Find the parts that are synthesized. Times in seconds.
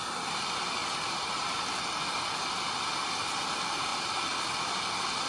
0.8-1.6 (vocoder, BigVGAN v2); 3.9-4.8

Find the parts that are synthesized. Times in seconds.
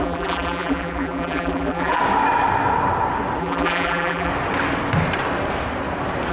0.0-2.0 (vocoder, BigVGAN v2); 3.4-4.3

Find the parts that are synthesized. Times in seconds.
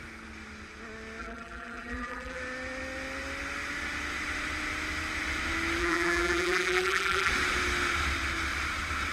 1.2-2.4 (vocoder, BigVGAN v2); 5.8-7.3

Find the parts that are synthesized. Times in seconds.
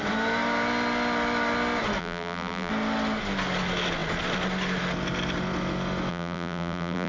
2.0-2.7 (vocoder, BigVGAN v2); 6.1-7.1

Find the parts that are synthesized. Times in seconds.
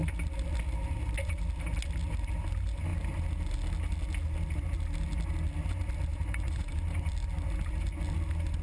6.1-7.1 (vocoder, BigVGAN v2)